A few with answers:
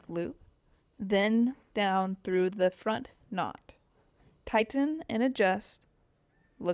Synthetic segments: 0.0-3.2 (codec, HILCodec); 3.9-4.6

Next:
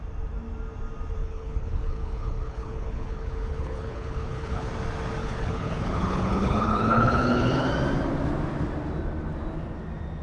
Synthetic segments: 1.2-4.7 (codec, HILCodec); 5.2-7.7

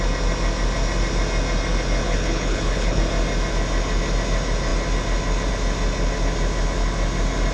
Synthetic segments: 2.0-3.0 (codec, HILCodec)

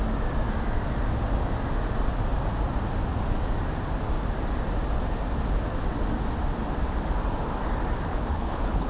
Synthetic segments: 8.1-8.9 (codec, HILCodec)